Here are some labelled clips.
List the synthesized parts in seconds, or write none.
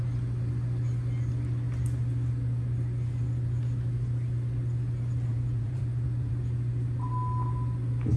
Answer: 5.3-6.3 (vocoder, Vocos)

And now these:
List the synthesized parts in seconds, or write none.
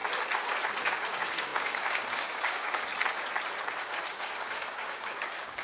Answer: 0.8-2.9 (codec, DAC); 3.8-5.6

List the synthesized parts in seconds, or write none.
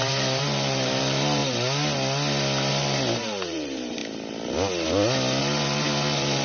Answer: 0.0-1.4 (vocoder, BigVGAN v2); 2.7-4.0; 5.4-6.4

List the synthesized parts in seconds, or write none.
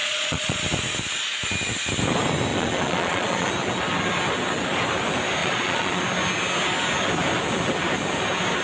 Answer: 0.0-0.6 (vocoder, Vocos); 2.5-3.5; 5.4-6.0